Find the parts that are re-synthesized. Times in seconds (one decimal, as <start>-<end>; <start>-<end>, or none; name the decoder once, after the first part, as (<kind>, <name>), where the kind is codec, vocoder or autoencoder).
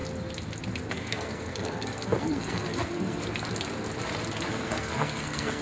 0.9-3.2 (codec, SNAC); 4.5-5.6